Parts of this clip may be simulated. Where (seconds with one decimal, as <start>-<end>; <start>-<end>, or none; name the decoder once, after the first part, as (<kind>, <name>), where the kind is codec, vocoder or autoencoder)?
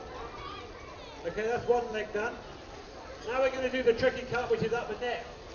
none